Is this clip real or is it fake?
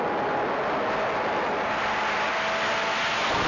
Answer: real